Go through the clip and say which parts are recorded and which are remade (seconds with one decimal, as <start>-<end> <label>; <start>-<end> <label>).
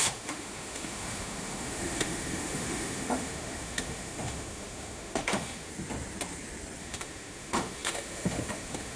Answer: 0.0-5.7 remade; 5.7-6.8 recorded; 6.8-9.0 remade